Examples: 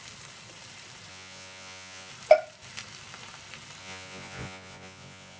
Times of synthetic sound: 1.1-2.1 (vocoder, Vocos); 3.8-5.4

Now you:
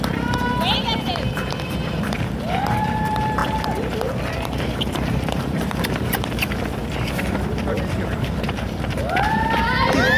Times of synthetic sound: 0.0-3.4 (vocoder, BigVGAN v2); 5.3-6.8; 7.8-10.2

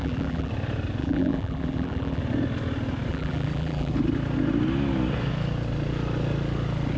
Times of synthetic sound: 0.0-0.5 (vocoder, BigVGAN v2); 1.0-2.2; 3.1-3.9

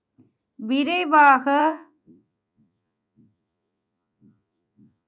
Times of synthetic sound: 1.6-5.1 (vocoder, Vocos)

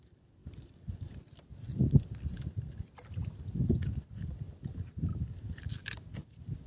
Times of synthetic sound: none

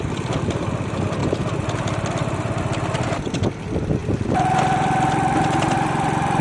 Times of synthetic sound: none

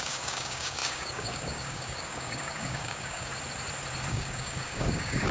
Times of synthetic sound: 0.0-3.3 (codec, DAC); 4.1-5.3